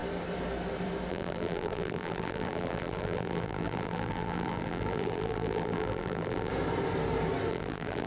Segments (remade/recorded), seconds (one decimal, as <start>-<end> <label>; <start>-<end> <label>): 0.0-1.1 recorded; 1.1-6.5 remade; 6.5-7.5 recorded; 7.5-8.1 remade